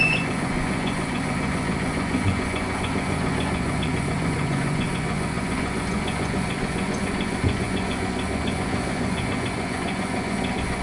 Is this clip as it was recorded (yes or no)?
no